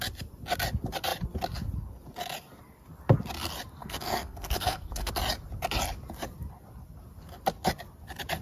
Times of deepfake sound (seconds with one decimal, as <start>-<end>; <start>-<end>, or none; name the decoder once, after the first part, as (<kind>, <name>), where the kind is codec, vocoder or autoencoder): 3.8-5.1 (codec, SNAC)